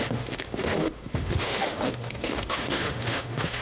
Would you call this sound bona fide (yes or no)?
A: no